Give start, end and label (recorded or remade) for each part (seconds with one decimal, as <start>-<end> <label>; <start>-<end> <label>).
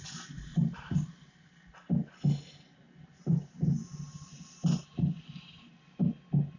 0.0-0.5 recorded; 0.5-1.3 remade; 1.3-2.8 recorded; 2.8-6.1 remade; 6.1-6.6 recorded